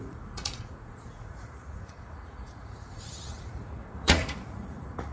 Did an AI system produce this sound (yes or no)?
yes